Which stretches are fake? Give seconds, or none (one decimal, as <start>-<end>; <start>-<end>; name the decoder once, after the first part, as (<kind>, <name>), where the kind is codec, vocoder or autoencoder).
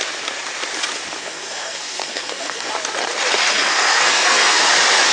1.2-2.7 (codec, SNAC); 3.5-4.6